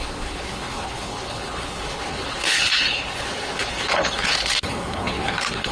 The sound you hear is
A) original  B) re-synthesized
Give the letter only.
B